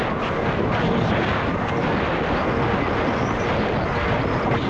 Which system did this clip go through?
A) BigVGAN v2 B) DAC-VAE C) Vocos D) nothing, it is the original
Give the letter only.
D